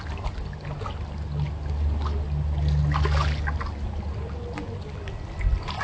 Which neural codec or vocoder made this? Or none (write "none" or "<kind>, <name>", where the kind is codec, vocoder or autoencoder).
none